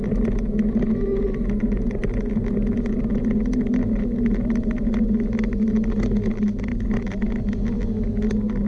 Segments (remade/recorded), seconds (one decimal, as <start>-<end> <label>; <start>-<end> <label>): 0.0-8.7 recorded